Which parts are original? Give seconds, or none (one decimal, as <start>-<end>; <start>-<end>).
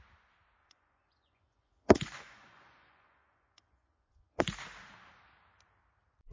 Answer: 0.0-0.6; 4.4-6.3